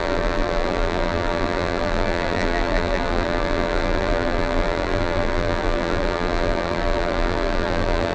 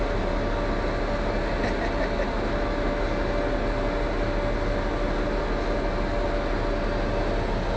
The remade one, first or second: first